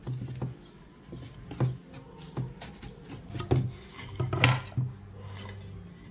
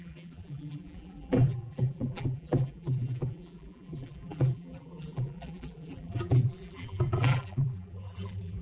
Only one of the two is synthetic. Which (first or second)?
second